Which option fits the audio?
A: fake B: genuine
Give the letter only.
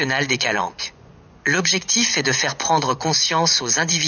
A